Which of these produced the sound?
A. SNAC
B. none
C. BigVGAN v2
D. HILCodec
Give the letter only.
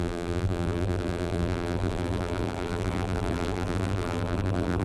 C